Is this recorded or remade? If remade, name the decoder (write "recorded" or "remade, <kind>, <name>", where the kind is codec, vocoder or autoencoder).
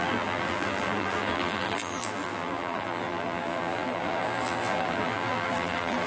remade, vocoder, BigVGAN v2